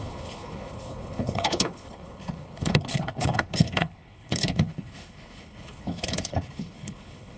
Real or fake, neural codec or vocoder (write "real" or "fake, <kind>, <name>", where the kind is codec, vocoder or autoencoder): fake, codec, HILCodec